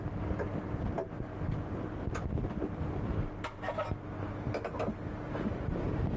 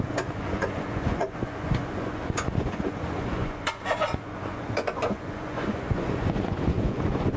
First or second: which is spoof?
second